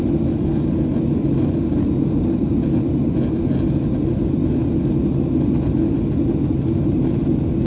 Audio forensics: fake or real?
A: real